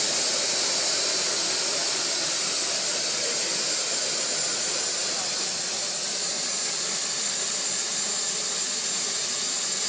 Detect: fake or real real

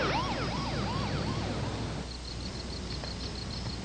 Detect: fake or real real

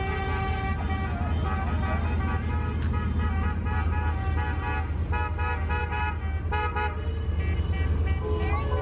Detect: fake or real real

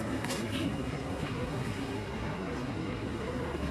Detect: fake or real fake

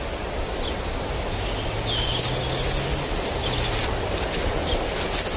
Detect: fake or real real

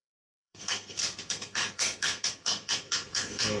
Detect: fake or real fake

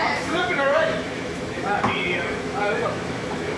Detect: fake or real fake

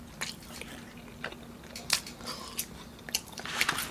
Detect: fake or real real